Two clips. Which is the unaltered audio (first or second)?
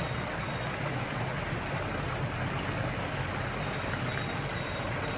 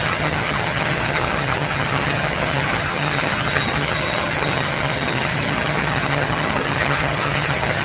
first